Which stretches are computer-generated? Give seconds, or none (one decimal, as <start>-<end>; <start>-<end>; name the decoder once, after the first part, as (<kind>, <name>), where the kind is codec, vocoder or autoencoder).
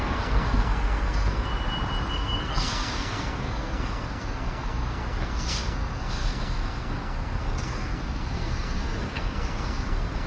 0.0-1.5 (codec, SNAC); 2.1-10.3